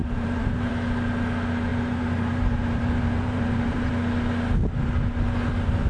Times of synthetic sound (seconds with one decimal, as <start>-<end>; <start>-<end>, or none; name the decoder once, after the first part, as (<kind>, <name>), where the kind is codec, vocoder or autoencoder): 0.0-0.7 (vocoder, BigVGAN v2); 1.7-3.9